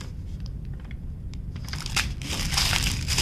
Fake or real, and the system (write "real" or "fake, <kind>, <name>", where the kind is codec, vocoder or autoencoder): fake, vocoder, BigVGAN v2